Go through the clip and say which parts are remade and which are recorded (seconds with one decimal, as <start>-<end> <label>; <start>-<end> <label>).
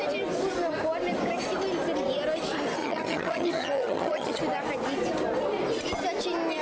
0.0-2.8 recorded; 2.8-4.4 remade; 4.4-6.6 recorded